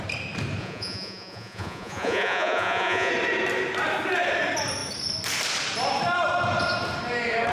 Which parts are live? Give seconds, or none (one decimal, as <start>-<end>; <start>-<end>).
0.0-0.6; 3.1-7.5